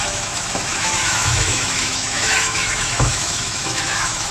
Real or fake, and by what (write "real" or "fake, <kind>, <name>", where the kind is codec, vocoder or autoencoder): fake, autoencoder, DAC-VAE